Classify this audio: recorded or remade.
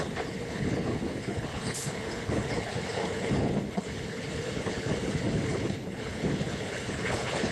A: remade